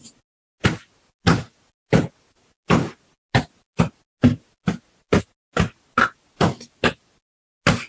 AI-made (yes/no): no